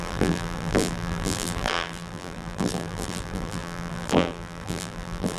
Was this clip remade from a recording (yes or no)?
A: yes